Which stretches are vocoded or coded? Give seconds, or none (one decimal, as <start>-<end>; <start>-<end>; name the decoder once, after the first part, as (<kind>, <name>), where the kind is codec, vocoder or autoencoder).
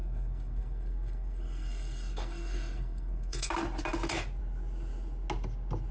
0.0-3.5 (codec, SNAC)